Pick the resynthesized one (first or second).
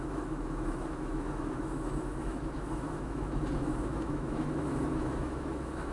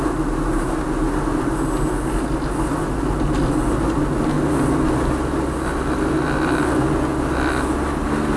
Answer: first